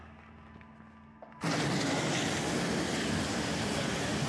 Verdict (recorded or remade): recorded